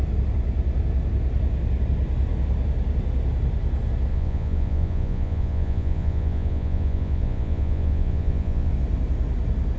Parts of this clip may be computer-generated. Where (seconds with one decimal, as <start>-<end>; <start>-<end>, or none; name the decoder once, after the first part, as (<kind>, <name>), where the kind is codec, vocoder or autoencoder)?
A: 4.1-8.7 (vocoder, Vocos)